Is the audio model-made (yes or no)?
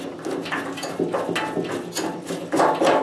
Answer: no